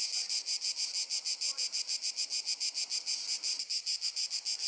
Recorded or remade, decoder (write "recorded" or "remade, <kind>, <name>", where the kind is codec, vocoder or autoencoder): recorded